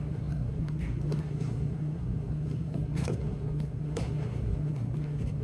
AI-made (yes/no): yes